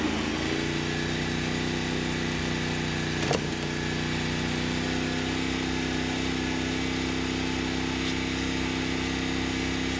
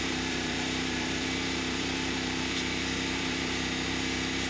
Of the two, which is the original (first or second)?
first